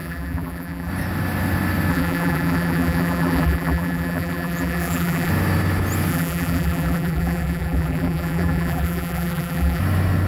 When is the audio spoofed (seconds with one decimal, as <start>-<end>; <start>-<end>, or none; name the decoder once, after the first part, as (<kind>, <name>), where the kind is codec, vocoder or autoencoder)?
0.0-0.9 (vocoder, BigVGAN v2); 1.9-5.3; 6.1-9.8